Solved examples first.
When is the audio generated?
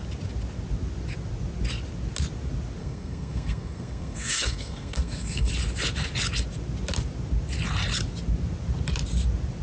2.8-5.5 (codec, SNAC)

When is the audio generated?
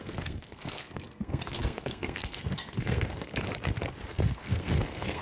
0.0-3.3 (codec, SNAC); 4.1-5.2